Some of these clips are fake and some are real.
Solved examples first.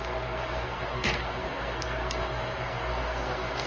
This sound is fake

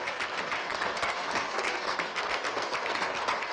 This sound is fake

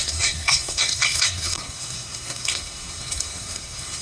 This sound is fake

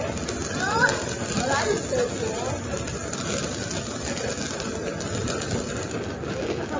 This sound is real